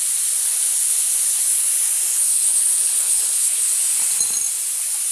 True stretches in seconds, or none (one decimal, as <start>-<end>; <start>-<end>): 0.0-0.4; 1.4-2.1; 3.7-5.1